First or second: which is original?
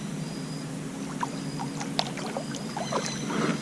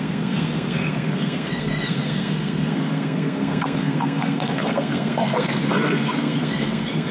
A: first